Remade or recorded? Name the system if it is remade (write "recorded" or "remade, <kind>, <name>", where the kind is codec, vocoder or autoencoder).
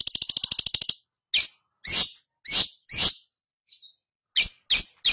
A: recorded